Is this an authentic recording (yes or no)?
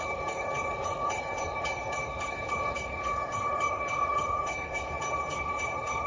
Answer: no